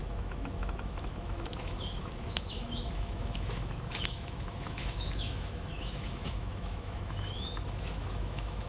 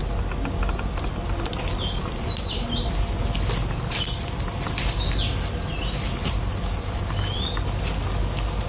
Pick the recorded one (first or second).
second